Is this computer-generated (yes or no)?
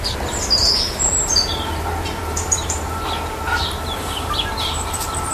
yes